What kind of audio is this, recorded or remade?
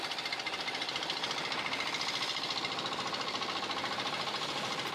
recorded